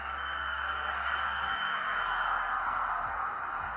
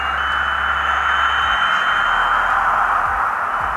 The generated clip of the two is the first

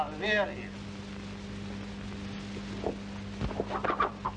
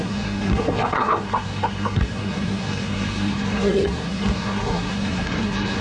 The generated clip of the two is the second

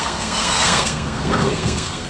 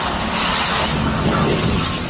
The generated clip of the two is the first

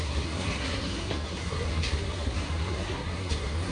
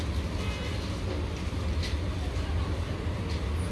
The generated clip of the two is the first